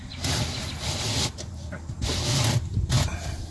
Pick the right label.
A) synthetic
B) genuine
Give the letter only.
B